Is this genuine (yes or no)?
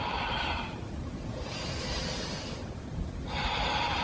yes